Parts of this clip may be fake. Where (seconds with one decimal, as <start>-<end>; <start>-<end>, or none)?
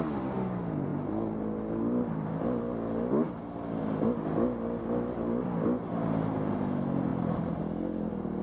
none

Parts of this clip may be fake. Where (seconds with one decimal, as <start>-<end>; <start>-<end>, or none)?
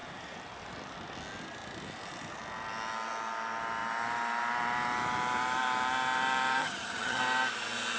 6.6-7.2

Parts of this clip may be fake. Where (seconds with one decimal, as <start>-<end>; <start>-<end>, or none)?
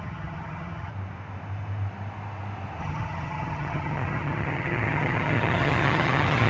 0.0-0.9; 2.8-6.5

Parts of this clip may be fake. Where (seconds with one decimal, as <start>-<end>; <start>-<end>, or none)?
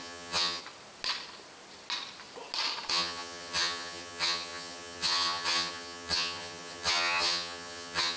0.0-0.6; 2.9-8.2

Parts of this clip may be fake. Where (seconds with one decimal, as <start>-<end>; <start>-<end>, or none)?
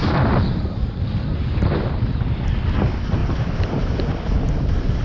none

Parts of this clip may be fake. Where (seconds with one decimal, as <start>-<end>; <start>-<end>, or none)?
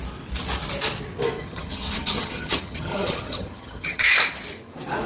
1.4-4.1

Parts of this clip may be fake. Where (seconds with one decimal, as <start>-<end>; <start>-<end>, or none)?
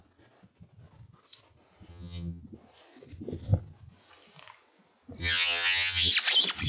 1.9-2.4; 5.2-6.1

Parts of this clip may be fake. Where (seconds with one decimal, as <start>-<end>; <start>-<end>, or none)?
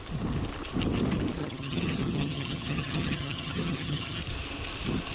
1.4-4.2